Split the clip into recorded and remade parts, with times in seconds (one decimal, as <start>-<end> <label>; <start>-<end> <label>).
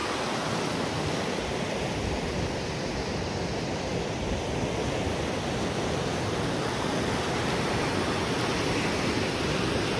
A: 0.0-10.0 recorded